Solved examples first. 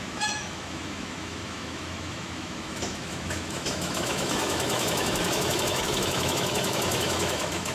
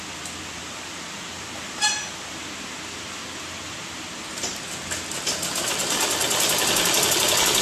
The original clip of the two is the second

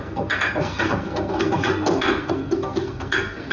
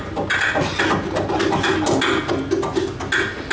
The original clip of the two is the second